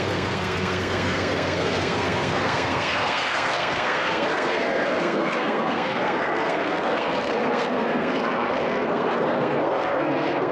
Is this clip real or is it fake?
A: fake